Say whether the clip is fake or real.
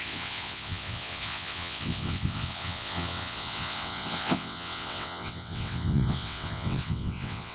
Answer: fake